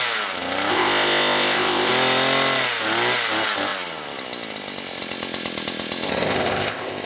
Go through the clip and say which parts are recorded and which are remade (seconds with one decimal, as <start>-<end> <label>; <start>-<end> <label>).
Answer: 0.0-0.7 recorded; 0.7-1.9 remade; 1.9-6.1 recorded; 6.1-7.1 remade